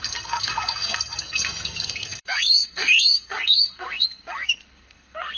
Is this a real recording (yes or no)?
no